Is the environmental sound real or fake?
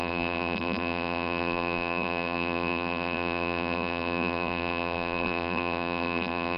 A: fake